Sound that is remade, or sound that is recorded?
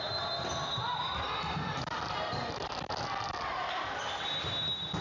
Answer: recorded